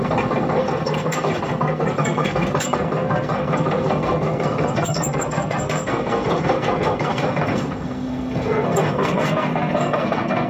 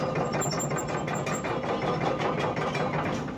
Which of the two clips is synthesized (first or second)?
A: first